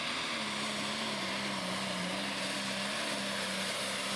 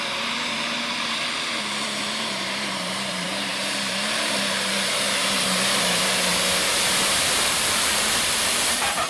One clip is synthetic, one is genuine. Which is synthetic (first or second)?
second